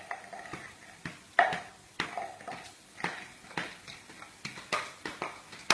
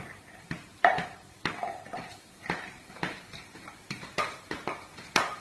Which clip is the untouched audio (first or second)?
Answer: first